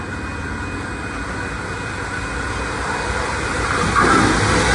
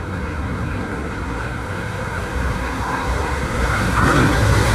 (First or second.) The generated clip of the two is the second